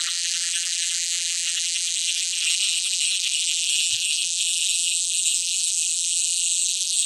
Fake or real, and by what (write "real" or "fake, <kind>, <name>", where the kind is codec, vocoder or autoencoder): fake, vocoder, BigVGAN v2